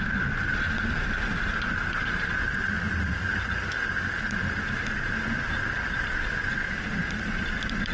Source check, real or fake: real